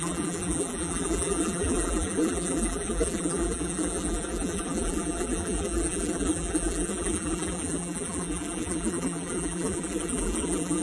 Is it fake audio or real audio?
fake